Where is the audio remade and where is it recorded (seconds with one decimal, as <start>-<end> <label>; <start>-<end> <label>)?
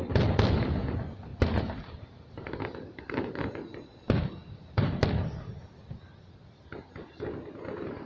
0.0-1.3 recorded; 1.3-3.0 remade; 3.0-8.1 recorded